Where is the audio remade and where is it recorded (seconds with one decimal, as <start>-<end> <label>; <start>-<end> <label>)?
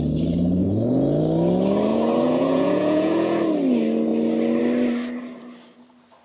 0.0-0.6 recorded; 0.6-1.2 remade; 1.2-1.9 recorded; 1.9-3.4 remade; 3.4-6.2 recorded